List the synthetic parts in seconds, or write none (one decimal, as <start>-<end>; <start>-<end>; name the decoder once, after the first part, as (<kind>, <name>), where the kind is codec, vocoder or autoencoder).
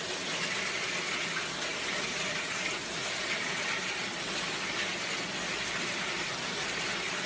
none